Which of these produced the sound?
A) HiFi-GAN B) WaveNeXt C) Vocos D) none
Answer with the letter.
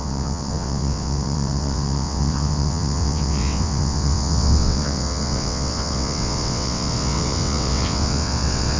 B